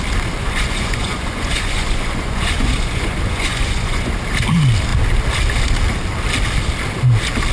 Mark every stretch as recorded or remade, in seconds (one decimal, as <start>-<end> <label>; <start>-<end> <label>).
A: 0.0-0.4 recorded; 0.4-4.1 remade; 4.1-7.5 recorded

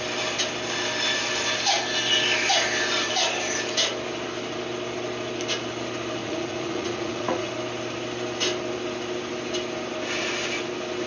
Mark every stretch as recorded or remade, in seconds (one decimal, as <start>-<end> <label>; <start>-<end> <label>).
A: 0.0-6.2 recorded; 6.2-7.5 remade; 7.5-11.1 recorded

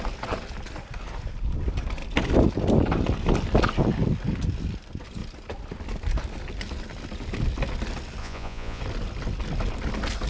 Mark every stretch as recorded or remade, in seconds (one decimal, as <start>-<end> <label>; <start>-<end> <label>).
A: 0.0-8.2 recorded; 8.2-8.8 remade; 8.8-10.3 recorded

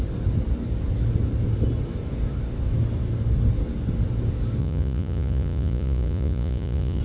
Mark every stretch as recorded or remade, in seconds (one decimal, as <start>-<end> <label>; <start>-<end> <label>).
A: 0.0-4.6 recorded; 4.6-7.0 remade

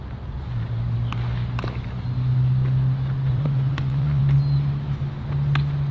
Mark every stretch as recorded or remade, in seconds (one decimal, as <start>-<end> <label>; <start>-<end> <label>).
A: 0.0-3.3 recorded; 3.3-4.2 remade; 4.2-5.9 recorded

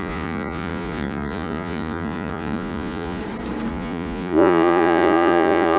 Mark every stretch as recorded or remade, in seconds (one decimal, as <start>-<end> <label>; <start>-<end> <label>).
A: 0.0-3.2 remade; 3.2-3.7 recorded; 3.7-5.8 remade

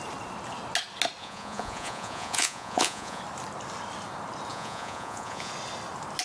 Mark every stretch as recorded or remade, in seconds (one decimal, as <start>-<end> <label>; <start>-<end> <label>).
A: 0.0-1.2 recorded; 1.2-3.2 remade; 3.2-4.5 recorded; 4.5-5.5 remade; 5.5-6.2 recorded

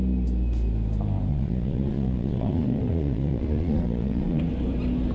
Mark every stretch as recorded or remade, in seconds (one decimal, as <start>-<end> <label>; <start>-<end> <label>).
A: 0.0-1.3 recorded; 1.3-4.4 remade; 4.4-5.1 recorded